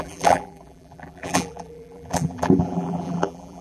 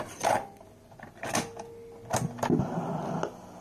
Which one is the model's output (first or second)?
first